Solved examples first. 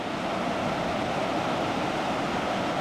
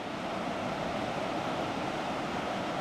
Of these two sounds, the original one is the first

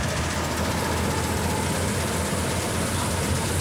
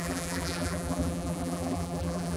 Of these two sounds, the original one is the first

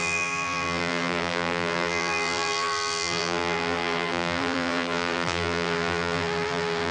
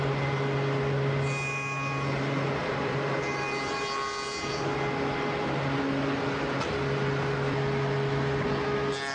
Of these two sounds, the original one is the second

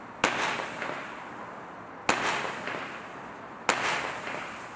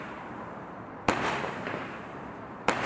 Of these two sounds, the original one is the first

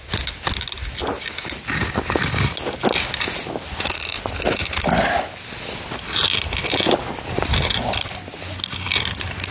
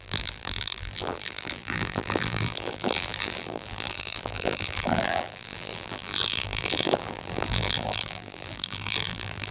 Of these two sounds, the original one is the first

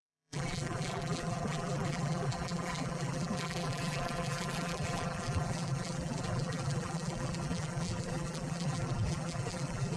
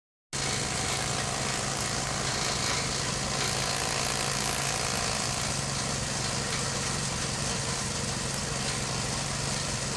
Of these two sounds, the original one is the second